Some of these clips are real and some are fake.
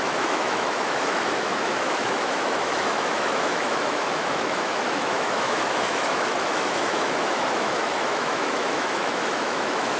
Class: fake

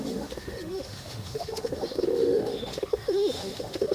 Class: fake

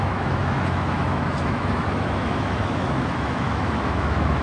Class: fake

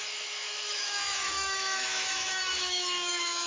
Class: fake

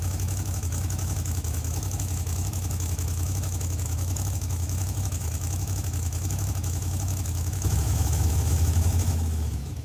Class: fake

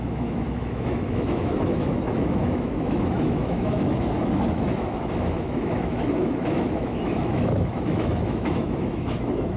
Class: fake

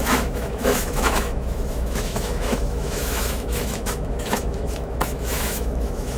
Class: fake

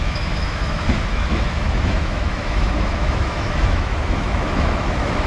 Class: fake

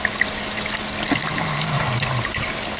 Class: real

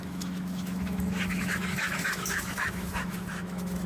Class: fake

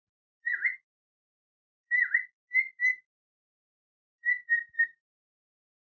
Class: real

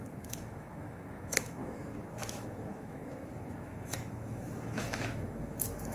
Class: fake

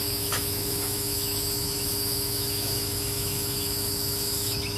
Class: fake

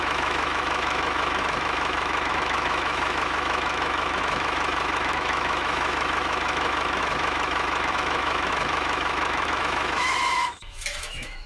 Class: fake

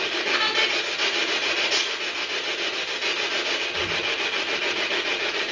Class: real